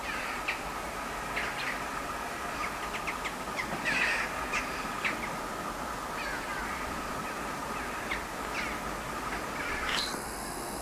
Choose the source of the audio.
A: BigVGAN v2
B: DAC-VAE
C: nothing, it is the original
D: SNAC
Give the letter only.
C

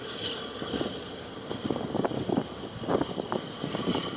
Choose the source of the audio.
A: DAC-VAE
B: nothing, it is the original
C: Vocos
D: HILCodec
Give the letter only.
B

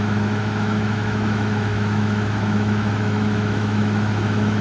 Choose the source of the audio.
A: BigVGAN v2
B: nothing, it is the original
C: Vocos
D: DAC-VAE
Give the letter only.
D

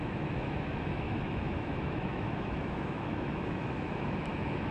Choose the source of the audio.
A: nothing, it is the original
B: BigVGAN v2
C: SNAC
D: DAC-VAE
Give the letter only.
D